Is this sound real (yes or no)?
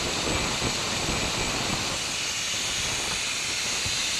yes